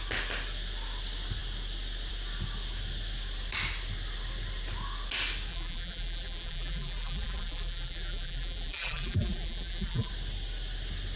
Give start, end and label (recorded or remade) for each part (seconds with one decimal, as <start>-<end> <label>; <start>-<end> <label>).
0.0-5.5 recorded; 5.5-10.1 remade; 10.1-11.2 recorded